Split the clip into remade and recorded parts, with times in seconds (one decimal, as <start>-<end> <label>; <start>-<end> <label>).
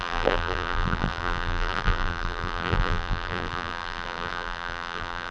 0.0-5.3 remade